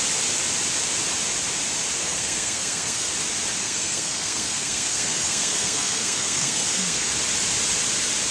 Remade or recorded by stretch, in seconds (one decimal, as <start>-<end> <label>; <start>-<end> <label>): 0.0-2.0 recorded; 2.0-3.1 remade; 3.1-3.6 recorded; 3.6-7.1 remade; 7.1-8.3 recorded